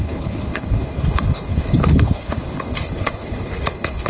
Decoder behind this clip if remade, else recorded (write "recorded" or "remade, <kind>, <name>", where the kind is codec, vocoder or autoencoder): remade, codec, HILCodec